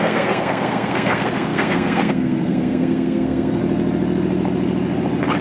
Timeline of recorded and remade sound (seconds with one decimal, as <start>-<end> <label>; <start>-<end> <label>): 0.0-3.6 remade; 3.6-5.4 recorded